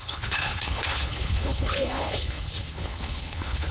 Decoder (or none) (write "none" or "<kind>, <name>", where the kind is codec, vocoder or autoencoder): codec, HILCodec